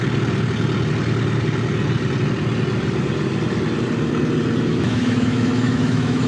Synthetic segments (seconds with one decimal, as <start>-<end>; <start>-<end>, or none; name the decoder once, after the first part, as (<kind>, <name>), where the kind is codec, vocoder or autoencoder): 4.7-6.3 (autoencoder, DAC-VAE)

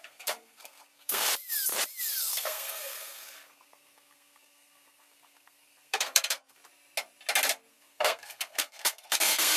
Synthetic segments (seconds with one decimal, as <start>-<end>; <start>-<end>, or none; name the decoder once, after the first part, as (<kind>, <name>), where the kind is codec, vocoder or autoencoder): 0.0-1.3 (codec, SNAC); 2.2-6.6; 7.7-9.6

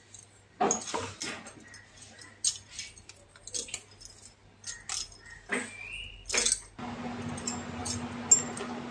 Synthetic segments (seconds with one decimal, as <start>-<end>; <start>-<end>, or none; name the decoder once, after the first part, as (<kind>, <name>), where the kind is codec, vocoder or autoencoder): none

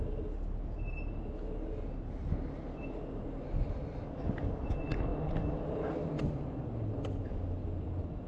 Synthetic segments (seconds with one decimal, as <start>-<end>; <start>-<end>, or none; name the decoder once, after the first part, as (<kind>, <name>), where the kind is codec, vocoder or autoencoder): none

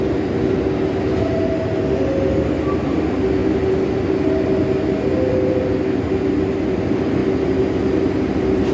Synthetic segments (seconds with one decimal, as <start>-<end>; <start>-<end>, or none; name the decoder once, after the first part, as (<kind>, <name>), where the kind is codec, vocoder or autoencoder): none

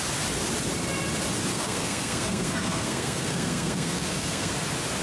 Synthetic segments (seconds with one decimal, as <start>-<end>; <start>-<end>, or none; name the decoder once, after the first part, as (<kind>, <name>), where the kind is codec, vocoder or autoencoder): 1.5-4.5 (codec, SNAC)

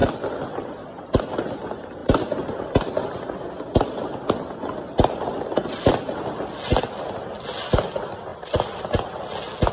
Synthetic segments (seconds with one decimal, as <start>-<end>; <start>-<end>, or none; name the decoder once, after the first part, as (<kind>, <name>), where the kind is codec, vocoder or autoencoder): 0.0-1.2 (vocoder, BigVGAN v2); 2.0-2.6; 8.3-8.8